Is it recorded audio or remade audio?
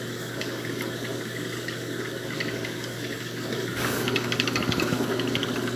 remade